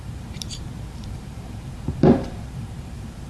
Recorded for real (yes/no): no